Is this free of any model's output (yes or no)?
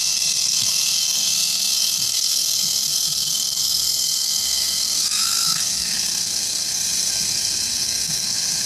no